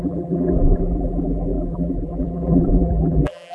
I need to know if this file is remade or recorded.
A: remade